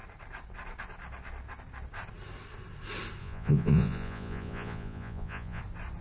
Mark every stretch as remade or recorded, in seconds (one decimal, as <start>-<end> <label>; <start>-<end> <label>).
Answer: 0.0-3.2 recorded; 3.2-5.6 remade; 5.6-6.0 recorded